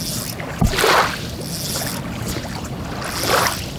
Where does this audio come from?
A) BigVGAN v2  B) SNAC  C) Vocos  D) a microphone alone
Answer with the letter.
D